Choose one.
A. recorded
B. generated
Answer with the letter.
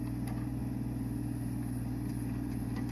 A